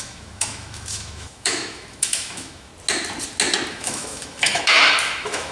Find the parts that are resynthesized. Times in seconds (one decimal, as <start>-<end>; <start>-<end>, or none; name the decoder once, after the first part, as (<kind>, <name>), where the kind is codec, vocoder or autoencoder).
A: 0.0-2.7 (autoencoder, DAC-VAE); 3.7-5.5